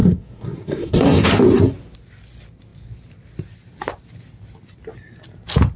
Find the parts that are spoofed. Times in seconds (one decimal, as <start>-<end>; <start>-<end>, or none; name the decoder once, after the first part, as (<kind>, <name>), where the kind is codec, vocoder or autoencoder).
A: 0.0-1.3 (codec, SNAC)